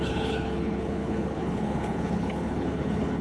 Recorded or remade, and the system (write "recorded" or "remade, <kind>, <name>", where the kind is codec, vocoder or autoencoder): remade, codec, HILCodec